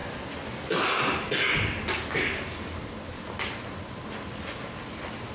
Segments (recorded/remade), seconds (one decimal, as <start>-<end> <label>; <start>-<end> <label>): 0.0-5.3 recorded

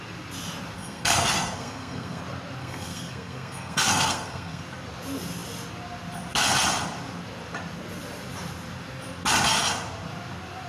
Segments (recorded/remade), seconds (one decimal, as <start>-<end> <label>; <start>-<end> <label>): 0.0-0.8 recorded; 0.8-2.2 remade; 2.2-2.6 recorded; 2.6-4.6 remade; 4.6-10.7 recorded

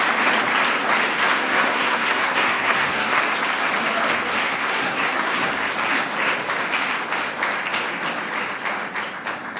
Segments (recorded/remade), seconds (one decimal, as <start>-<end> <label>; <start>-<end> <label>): 0.0-1.2 recorded; 1.2-3.2 remade; 3.2-4.4 recorded; 4.4-5.5 remade; 5.5-9.6 recorded

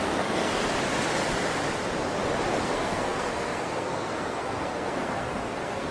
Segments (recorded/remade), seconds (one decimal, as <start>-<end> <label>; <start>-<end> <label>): 0.0-0.5 remade; 0.5-2.6 recorded; 2.6-5.9 remade

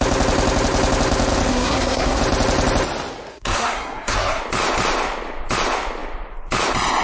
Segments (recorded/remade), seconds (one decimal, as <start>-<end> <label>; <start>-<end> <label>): 0.0-1.5 recorded; 1.5-2.2 remade; 2.2-3.3 recorded; 3.3-4.4 remade; 4.4-7.0 recorded

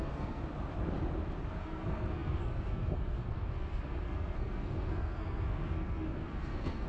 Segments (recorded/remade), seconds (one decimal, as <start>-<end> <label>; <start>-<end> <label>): 0.0-0.4 remade; 0.4-1.6 recorded; 1.6-6.9 remade

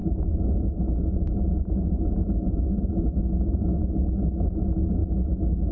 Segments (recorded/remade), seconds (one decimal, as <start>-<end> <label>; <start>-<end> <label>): 0.0-5.7 recorded

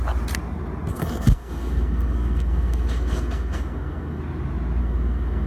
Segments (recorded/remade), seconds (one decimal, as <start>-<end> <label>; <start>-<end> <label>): 0.0-0.9 recorded; 0.9-4.2 remade; 4.2-4.8 recorded; 4.8-5.5 remade